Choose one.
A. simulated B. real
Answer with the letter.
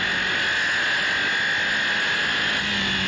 B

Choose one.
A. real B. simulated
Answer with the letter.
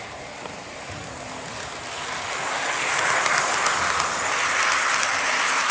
A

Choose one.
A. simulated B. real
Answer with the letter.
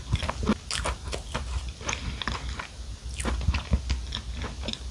B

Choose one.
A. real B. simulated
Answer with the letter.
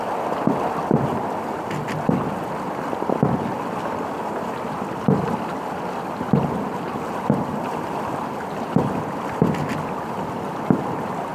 A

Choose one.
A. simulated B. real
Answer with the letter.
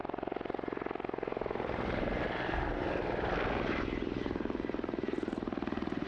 B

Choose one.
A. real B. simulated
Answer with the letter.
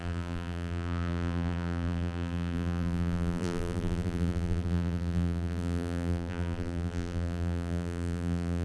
B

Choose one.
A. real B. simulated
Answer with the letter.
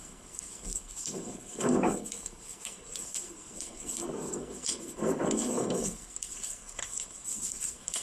B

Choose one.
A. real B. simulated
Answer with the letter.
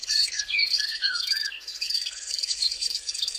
B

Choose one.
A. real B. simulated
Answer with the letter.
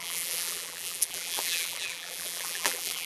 B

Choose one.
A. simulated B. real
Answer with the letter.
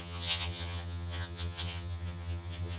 A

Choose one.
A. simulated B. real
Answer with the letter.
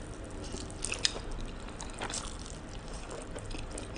B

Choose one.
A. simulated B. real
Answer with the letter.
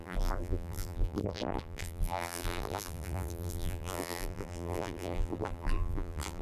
A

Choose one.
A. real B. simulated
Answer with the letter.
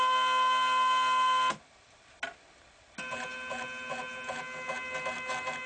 A